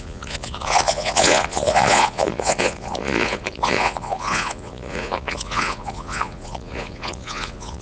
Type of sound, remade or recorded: remade